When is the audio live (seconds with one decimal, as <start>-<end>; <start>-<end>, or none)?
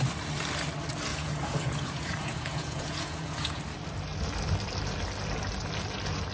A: 0.0-1.1; 3.6-6.3